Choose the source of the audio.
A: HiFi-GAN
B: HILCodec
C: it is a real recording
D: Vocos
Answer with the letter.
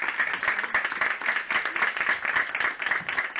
C